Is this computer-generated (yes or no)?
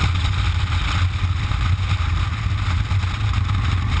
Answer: no